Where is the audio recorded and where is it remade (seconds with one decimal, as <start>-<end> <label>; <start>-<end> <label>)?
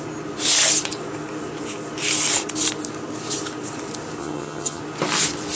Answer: 0.0-4.2 recorded; 4.2-4.8 remade; 4.8-5.5 recorded